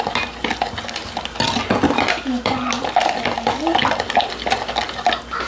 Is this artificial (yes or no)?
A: no